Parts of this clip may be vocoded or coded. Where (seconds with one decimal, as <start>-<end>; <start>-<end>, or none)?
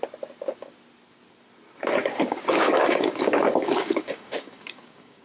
2.0-5.2